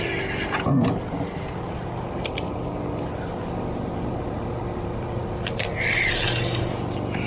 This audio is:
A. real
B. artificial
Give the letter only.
A